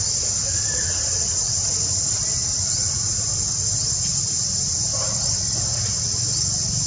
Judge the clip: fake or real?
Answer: real